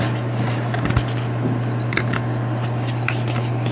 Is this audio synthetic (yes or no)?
no